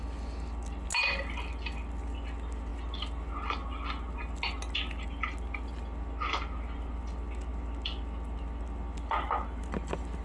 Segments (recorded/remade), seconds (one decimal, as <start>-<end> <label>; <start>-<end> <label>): 0.0-10.2 recorded

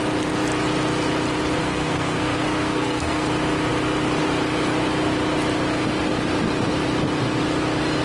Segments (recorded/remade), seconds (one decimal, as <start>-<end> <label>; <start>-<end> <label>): 0.0-1.6 recorded; 1.6-3.3 remade; 3.3-8.0 recorded

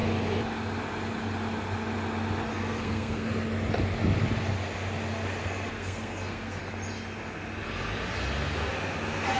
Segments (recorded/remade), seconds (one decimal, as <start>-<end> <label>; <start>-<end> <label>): 0.0-2.5 recorded; 2.5-3.3 remade; 3.3-5.4 recorded; 5.4-6.6 remade; 6.6-9.4 recorded

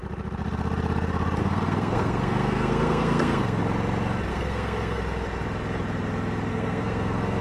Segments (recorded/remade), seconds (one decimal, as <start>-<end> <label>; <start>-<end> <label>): 0.0-1.4 recorded; 1.4-3.6 remade; 3.6-4.3 recorded; 4.3-5.0 remade; 5.0-6.5 recorded; 6.5-7.4 remade

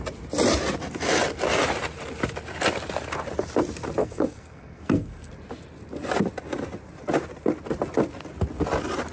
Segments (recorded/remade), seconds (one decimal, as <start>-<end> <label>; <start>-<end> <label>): 0.0-4.0 recorded; 4.0-5.3 remade; 5.3-9.1 recorded

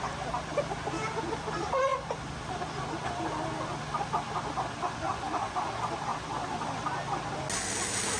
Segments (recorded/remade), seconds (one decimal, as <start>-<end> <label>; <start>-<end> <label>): 0.0-8.2 recorded